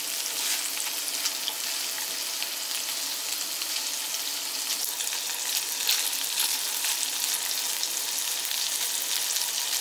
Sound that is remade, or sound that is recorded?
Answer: recorded